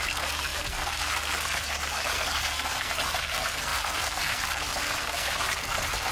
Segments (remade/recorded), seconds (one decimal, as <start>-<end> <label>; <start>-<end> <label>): 0.0-6.1 remade